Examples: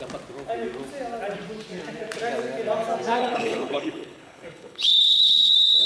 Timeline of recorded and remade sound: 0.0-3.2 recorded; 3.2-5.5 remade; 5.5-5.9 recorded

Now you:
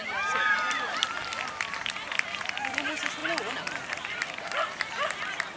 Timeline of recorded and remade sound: 0.0-5.6 recorded